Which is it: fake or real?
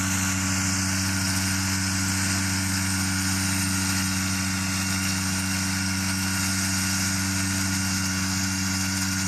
real